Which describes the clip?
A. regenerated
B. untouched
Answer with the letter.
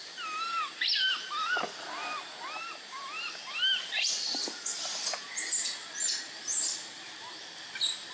B